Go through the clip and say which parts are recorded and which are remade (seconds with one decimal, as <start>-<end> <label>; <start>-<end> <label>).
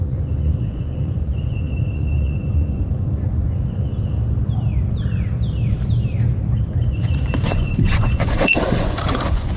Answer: 0.0-3.9 remade; 3.9-6.7 recorded; 6.7-9.6 remade